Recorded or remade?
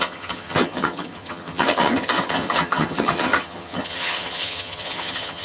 remade